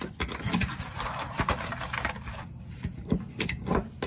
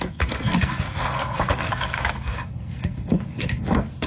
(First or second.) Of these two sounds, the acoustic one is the first